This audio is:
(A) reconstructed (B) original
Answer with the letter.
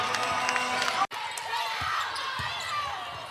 B